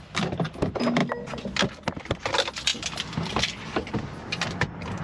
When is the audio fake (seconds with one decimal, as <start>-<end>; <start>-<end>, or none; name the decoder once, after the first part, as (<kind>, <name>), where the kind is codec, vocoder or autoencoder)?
none